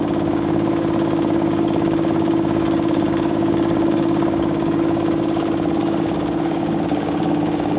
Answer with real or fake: fake